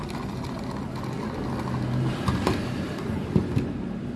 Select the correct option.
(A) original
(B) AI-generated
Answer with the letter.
A